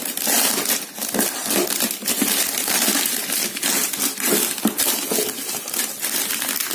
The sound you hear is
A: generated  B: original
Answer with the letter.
B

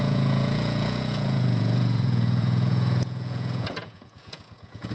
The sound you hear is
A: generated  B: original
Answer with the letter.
A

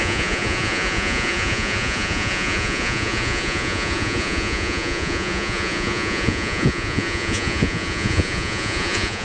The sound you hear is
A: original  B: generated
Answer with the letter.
B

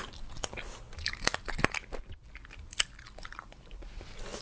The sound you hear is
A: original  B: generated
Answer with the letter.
A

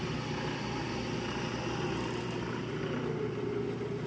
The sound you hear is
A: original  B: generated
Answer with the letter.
A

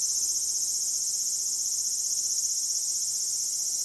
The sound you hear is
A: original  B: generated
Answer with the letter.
A